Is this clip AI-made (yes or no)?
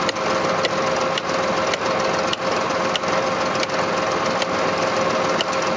no